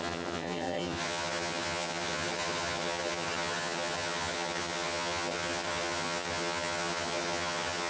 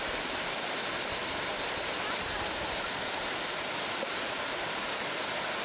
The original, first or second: second